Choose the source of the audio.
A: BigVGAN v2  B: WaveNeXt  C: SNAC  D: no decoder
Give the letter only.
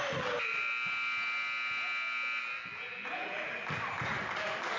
D